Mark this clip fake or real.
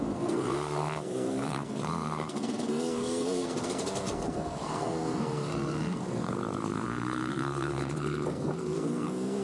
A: fake